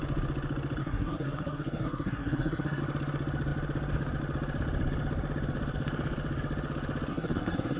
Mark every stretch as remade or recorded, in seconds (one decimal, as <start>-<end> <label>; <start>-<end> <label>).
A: 0.0-0.8 recorded; 0.8-2.8 remade; 2.8-7.1 recorded; 7.1-7.8 remade